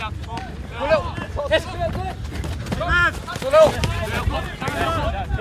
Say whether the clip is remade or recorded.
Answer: recorded